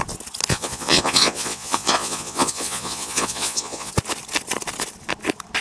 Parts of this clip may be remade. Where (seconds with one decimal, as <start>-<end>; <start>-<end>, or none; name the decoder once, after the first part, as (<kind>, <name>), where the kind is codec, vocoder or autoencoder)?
0.5-3.9 (vocoder, Vocos)